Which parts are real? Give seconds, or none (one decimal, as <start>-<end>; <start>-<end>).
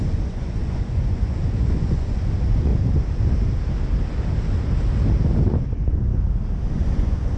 2.7-5.5; 6.1-6.7